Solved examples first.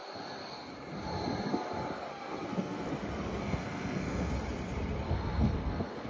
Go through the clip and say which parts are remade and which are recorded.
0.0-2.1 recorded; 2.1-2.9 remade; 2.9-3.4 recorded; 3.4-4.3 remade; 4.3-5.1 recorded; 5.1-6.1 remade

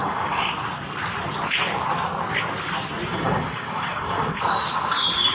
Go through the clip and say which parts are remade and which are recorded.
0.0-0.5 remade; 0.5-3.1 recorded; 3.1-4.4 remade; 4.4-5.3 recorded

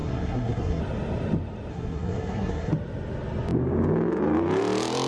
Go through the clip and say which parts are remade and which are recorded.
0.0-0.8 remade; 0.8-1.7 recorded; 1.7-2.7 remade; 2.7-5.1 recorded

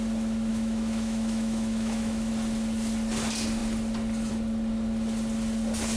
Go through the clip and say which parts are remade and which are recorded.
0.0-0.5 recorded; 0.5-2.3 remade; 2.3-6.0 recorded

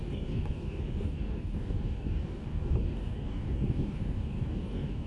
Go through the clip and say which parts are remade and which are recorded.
0.0-5.1 remade

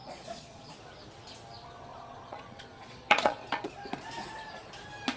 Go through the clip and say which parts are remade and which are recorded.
0.0-0.7 remade; 0.7-1.9 recorded; 1.9-3.7 remade; 3.7-5.2 recorded

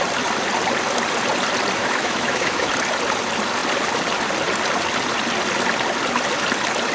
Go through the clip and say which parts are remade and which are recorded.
0.0-1.8 recorded; 1.8-2.7 remade; 2.7-6.9 recorded